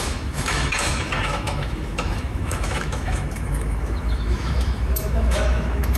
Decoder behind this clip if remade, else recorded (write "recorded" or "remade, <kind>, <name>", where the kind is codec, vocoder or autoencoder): remade, autoencoder, DAC-VAE